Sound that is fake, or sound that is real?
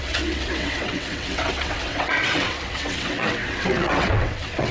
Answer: fake